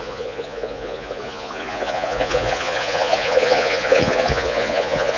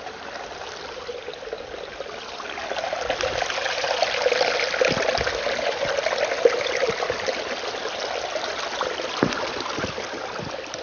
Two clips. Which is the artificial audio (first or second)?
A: first